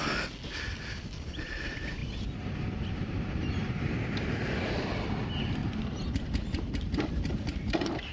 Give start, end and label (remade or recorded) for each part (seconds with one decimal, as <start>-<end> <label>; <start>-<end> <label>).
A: 0.0-2.0 recorded; 2.0-4.7 remade; 4.7-5.6 recorded; 5.6-8.1 remade

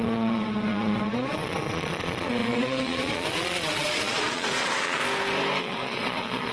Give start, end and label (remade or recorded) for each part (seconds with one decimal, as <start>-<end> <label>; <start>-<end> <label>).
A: 0.0-5.0 remade; 5.0-5.6 recorded; 5.6-6.5 remade

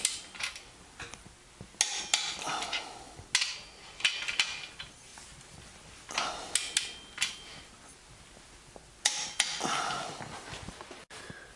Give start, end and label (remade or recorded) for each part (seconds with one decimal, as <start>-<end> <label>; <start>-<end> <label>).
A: 0.0-11.6 recorded

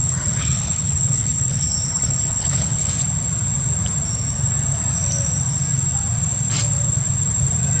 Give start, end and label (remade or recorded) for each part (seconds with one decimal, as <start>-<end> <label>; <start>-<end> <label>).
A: 0.0-2.9 remade; 2.9-7.8 recorded

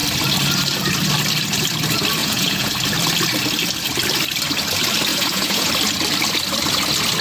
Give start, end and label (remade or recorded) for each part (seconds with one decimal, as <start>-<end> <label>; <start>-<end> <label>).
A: 0.0-2.2 recorded; 2.2-2.7 remade; 2.7-5.1 recorded; 5.1-5.7 remade; 5.7-7.2 recorded

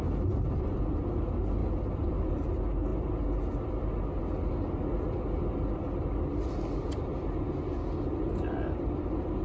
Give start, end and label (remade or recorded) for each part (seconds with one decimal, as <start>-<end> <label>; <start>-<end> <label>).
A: 0.0-9.4 recorded